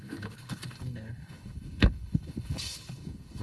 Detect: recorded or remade remade